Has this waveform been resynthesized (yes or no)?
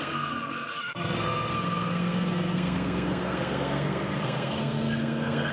yes